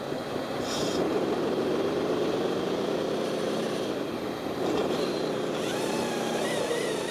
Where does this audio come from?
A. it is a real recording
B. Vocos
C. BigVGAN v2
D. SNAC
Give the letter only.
C